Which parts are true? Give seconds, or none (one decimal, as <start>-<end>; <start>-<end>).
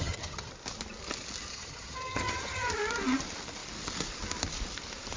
0.5-1.5; 2.7-5.2